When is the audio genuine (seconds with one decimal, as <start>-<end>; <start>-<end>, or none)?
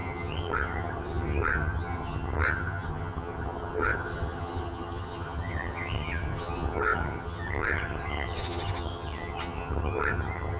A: none